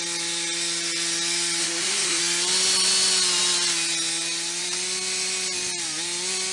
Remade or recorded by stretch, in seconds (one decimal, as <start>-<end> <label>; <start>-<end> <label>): 0.0-1.6 recorded; 1.6-2.2 remade; 2.2-6.5 recorded